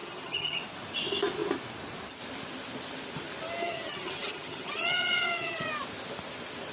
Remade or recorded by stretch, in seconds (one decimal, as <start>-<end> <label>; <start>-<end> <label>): 0.0-0.6 remade; 0.6-3.6 recorded; 3.6-5.7 remade; 5.7-6.7 recorded